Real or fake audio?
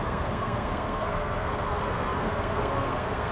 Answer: fake